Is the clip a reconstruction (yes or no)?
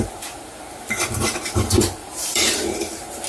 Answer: yes